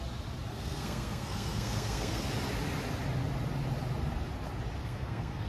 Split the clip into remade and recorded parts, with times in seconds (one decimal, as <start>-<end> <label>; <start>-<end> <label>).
0.0-0.5 recorded; 0.5-2.2 remade; 2.2-4.8 recorded; 4.8-5.5 remade

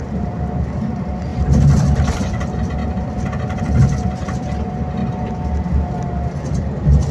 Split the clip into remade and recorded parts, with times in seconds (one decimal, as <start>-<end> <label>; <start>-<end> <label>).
0.0-5.0 remade; 5.0-5.9 recorded; 5.9-7.1 remade